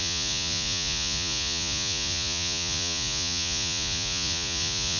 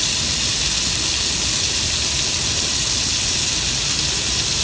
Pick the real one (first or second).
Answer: second